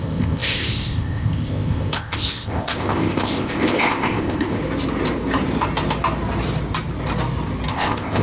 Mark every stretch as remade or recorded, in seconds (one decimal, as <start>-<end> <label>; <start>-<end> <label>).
0.0-4.6 remade; 4.6-7.7 recorded; 7.7-8.2 remade